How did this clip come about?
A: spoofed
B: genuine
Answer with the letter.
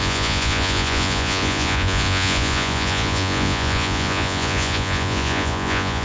A